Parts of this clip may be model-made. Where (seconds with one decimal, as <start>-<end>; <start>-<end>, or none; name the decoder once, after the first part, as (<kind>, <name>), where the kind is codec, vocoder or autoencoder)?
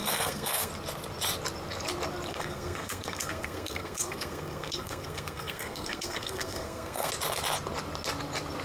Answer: 0.0-0.7 (codec, SNAC); 2.3-7.1